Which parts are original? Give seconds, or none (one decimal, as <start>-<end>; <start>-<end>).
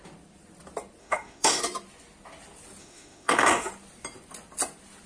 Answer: 0.0-1.0; 1.6-2.8; 3.7-5.1